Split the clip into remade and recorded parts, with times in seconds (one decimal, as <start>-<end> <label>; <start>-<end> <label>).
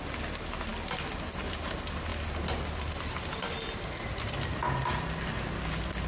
0.0-2.1 recorded; 2.1-4.3 remade; 4.3-6.1 recorded